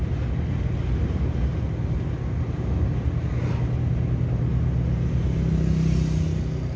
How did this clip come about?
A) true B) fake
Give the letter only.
A